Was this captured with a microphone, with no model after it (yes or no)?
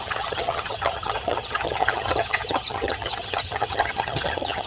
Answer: no